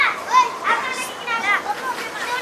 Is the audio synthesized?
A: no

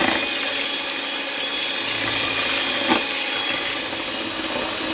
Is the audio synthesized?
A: no